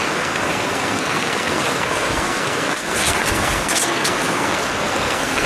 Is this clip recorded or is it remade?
remade